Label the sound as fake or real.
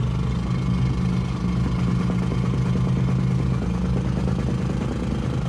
real